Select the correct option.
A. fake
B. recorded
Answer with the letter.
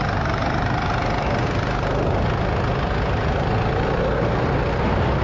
B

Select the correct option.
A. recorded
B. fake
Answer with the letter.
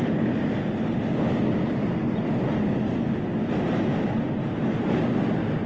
A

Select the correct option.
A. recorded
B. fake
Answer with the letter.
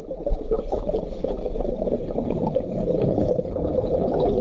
B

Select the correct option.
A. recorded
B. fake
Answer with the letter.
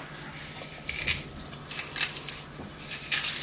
A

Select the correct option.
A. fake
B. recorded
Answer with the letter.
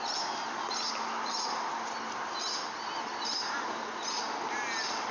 B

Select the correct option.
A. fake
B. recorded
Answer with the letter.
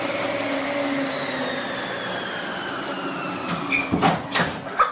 B